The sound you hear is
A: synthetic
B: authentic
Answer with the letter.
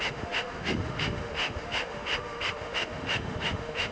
A